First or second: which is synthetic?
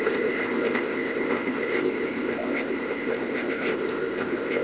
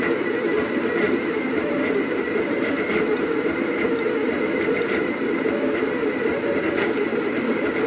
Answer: first